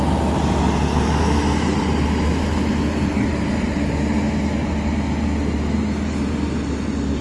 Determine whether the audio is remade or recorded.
recorded